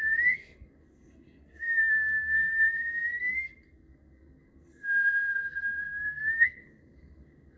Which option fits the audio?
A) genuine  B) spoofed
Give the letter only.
B